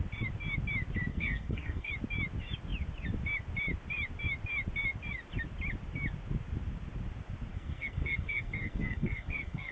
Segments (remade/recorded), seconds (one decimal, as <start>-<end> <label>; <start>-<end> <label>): 0.0-1.1 recorded; 1.1-1.9 remade; 1.9-7.5 recorded; 7.5-9.7 remade